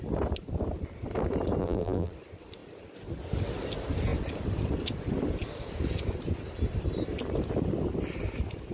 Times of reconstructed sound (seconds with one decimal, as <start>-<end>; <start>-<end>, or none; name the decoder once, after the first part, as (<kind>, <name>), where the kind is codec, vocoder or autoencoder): 1.6-2.1 (vocoder, BigVGAN v2)